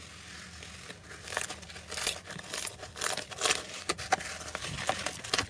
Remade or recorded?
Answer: recorded